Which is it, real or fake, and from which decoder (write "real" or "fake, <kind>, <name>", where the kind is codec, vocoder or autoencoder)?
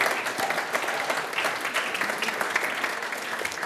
real